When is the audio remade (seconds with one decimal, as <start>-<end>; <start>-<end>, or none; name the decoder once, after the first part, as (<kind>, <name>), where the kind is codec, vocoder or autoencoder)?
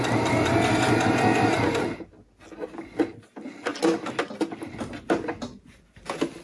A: none